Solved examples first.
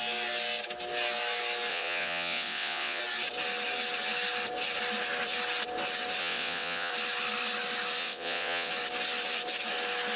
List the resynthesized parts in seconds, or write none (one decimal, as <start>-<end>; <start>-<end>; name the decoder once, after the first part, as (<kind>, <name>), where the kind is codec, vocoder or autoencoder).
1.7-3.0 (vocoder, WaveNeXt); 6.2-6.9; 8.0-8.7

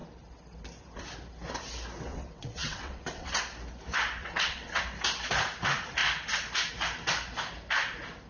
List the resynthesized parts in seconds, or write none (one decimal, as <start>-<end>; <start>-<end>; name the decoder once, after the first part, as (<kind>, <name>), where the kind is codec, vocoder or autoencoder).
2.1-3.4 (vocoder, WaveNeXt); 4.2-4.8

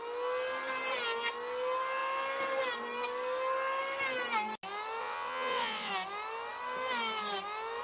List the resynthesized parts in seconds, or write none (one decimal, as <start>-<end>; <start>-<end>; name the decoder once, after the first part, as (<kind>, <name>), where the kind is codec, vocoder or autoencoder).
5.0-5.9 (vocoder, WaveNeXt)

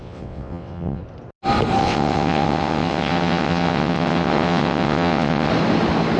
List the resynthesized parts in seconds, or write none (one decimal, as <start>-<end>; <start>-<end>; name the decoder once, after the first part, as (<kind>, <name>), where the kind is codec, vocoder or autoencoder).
0.0-1.0 (vocoder, WaveNeXt); 1.8-5.5

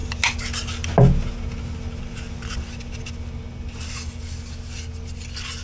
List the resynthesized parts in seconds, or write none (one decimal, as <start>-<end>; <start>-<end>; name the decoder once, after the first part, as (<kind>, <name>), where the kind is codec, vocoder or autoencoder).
none